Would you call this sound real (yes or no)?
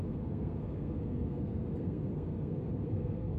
no